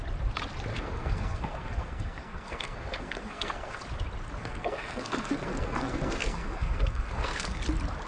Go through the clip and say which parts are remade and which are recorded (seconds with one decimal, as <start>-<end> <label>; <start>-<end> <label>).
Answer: 0.0-0.7 recorded; 0.7-3.8 remade; 3.8-4.4 recorded; 4.4-7.6 remade; 7.6-8.1 recorded